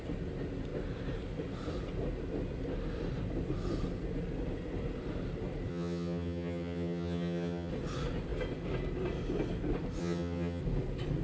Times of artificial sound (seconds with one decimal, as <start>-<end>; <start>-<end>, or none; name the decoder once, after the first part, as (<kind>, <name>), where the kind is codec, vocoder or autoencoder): 5.7-7.7 (vocoder, HiFi-GAN); 10.0-10.6